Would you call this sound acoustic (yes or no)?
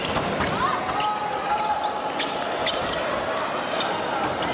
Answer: yes